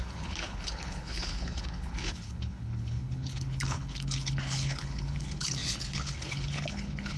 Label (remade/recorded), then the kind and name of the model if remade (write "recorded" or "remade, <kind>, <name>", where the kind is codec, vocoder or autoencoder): remade, codec, HILCodec